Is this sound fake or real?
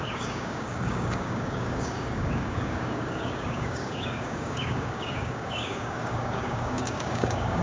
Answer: fake